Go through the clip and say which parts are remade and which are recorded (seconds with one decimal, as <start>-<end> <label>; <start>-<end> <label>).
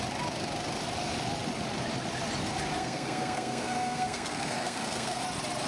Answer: 0.0-2.8 recorded; 2.8-5.2 remade; 5.2-5.7 recorded